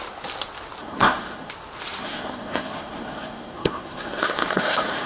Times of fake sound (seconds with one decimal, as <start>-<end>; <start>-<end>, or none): 0.8-1.5; 2.0-5.1